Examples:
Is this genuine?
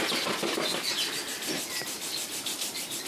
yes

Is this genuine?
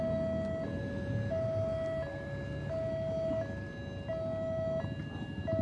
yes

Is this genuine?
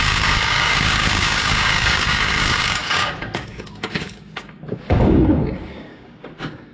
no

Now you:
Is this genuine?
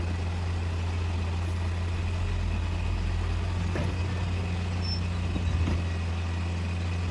yes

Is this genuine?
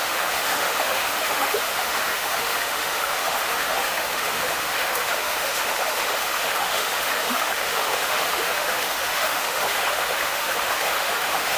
no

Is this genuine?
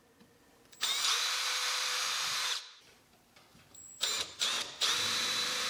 no